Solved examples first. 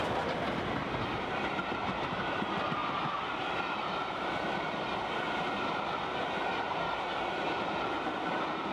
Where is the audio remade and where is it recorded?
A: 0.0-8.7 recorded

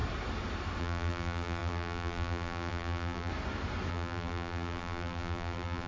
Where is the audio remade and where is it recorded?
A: 0.0-0.8 recorded; 0.8-3.3 remade; 3.3-3.9 recorded; 3.9-5.9 remade

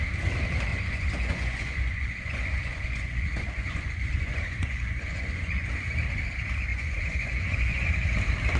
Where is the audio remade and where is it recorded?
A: 0.0-0.7 recorded; 0.7-5.7 remade; 5.7-6.7 recorded; 6.7-7.9 remade; 7.9-8.6 recorded